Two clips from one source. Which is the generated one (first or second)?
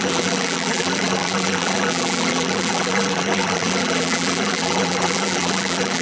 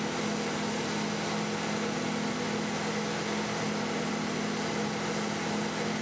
first